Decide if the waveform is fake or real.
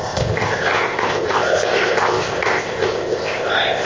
fake